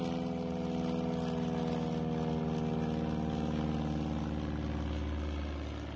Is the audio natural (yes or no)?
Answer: yes